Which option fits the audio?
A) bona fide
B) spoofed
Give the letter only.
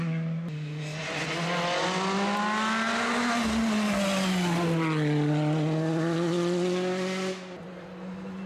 A